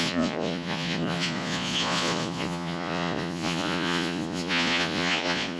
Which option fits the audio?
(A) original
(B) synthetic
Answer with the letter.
B